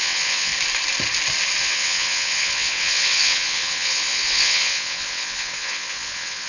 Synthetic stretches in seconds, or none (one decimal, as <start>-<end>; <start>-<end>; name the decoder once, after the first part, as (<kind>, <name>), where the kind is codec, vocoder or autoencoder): 0.0-0.5 (vocoder, WaveNeXt); 1.6-6.5